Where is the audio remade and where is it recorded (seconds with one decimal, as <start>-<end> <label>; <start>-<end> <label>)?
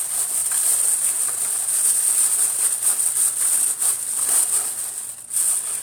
0.0-5.8 recorded